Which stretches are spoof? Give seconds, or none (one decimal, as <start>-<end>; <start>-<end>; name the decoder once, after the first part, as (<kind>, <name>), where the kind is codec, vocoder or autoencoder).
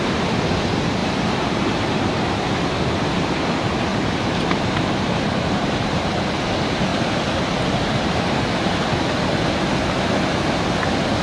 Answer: 1.0-1.6 (vocoder, BigVGAN v2); 3.9-6.3; 6.9-8.7